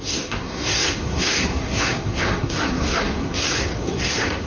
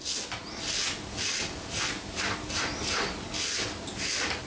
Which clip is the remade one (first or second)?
first